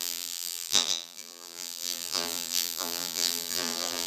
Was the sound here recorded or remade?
remade